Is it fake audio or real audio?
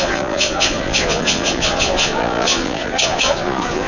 fake